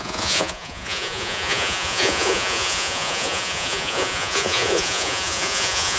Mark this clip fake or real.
fake